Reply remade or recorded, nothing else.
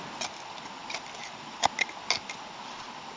recorded